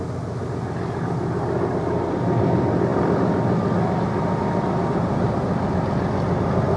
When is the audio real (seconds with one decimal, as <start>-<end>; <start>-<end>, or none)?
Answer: 0.0-6.8